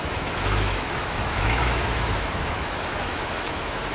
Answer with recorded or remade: remade